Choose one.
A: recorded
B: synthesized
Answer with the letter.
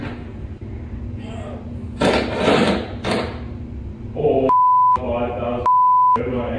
A